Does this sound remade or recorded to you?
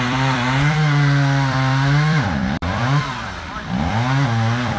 remade